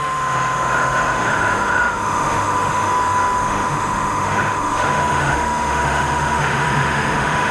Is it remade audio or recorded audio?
remade